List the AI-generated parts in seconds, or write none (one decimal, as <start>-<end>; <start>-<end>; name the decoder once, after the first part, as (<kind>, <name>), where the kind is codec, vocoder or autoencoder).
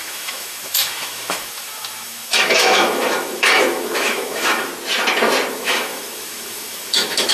0.0-4.7 (autoencoder, DAC-VAE); 5.5-7.3